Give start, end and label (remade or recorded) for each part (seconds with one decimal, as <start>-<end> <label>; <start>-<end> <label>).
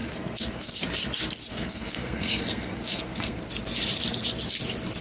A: 0.0-0.7 remade; 0.7-1.5 recorded; 1.5-3.4 remade; 3.4-5.0 recorded